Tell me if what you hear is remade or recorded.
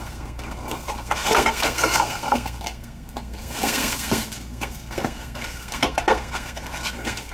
remade